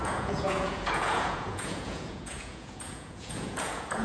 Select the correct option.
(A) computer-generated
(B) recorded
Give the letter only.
A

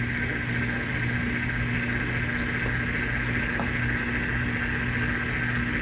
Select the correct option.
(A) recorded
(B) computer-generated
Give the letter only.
A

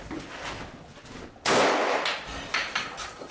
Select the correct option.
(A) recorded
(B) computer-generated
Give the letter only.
A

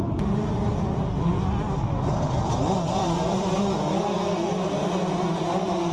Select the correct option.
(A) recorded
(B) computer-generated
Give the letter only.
A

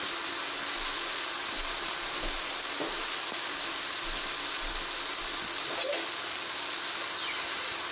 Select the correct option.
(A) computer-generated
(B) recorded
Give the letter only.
B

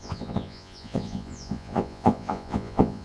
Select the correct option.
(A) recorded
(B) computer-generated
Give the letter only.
B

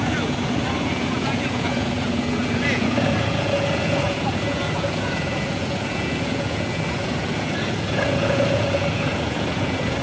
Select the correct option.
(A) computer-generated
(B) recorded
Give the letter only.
A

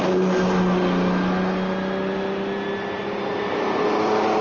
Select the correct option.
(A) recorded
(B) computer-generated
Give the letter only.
A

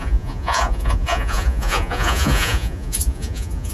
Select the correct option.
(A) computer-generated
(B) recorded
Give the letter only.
A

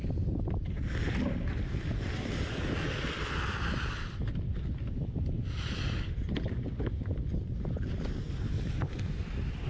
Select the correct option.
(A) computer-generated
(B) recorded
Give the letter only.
B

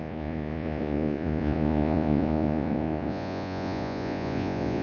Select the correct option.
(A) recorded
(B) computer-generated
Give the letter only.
B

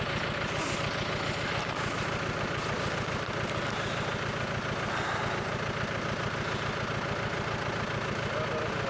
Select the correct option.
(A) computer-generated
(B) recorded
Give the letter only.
B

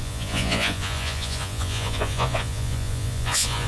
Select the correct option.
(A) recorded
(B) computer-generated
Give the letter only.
B